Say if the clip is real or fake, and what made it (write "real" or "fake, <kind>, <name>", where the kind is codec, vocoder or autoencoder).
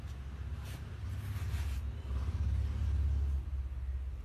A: real